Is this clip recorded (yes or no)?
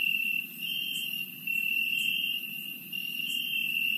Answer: no